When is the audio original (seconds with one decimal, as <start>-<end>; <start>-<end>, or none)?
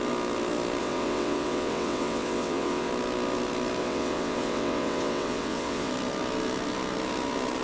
0.0-0.8; 2.9-3.8; 5.9-7.6